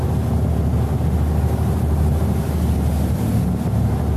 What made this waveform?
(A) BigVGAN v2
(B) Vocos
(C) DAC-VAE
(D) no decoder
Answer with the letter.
D